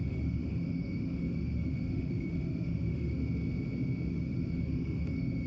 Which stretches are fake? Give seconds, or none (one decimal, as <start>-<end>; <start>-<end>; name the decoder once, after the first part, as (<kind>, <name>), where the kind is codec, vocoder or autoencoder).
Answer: 0.0-3.2 (autoencoder, DAC-VAE); 4.1-5.5